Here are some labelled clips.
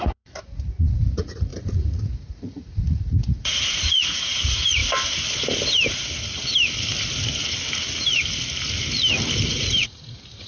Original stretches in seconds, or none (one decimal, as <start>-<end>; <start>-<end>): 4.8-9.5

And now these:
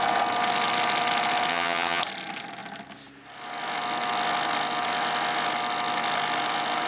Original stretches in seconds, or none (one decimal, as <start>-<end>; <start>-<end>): 0.0-1.5; 2.0-6.9

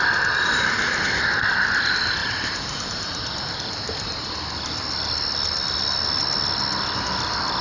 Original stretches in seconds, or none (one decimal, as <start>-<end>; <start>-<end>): 0.0-2.2; 4.3-7.6

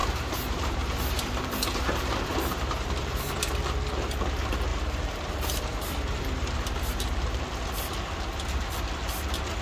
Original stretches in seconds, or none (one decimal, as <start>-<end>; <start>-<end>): 3.4-4.7; 7.4-9.6